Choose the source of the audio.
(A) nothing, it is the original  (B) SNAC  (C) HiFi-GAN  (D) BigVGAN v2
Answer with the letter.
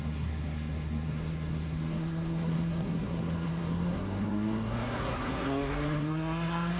B